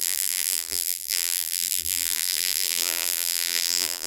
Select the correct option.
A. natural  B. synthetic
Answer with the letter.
B